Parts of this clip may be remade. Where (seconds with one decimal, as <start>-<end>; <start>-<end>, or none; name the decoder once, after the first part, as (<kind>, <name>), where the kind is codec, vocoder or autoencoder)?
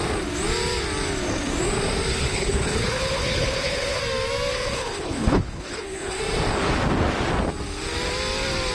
2.1-4.0 (codec, HILCodec); 4.5-6.2